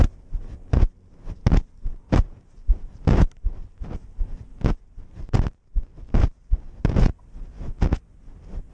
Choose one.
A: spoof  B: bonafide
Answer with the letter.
B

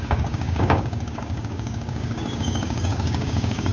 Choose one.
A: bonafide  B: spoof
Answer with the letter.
B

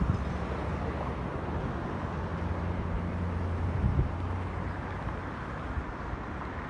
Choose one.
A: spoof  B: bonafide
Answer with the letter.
B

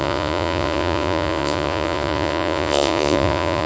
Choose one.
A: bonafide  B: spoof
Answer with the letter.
B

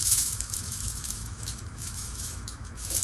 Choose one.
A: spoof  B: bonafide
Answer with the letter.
A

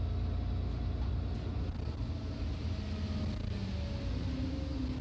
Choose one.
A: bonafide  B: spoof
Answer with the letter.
A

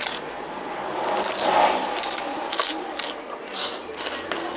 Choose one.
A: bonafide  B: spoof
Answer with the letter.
A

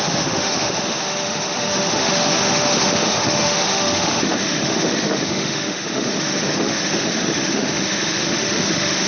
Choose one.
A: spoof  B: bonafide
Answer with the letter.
A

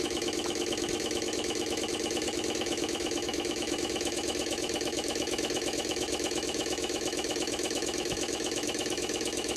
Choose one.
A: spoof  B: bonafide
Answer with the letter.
A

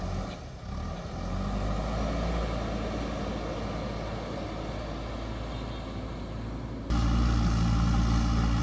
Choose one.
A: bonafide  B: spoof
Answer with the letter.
A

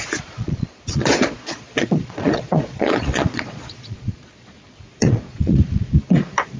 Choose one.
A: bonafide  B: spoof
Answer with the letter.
B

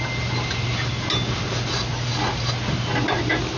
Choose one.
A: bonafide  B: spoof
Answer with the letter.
A